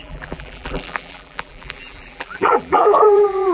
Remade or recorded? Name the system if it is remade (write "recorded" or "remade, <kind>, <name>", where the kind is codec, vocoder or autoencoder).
remade, vocoder, BigVGAN v2